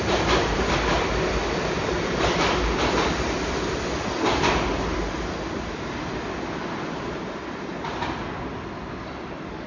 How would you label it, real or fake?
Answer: real